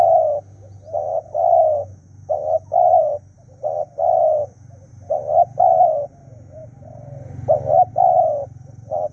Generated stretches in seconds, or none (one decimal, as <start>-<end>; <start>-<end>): 1.1-3.0; 4.2-4.8